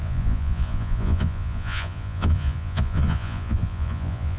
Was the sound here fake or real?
fake